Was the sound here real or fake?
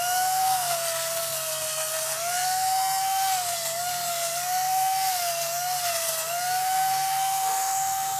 fake